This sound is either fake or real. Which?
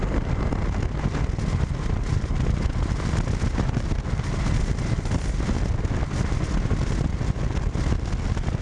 real